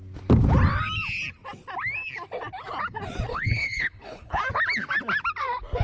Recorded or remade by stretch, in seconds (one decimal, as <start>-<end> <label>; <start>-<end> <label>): 0.0-3.3 recorded; 3.3-4.4 remade; 4.4-5.8 recorded